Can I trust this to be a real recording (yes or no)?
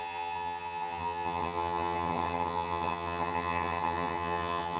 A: no